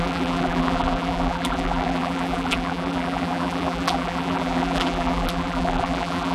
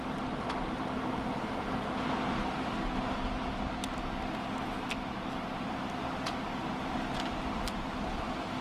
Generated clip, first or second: first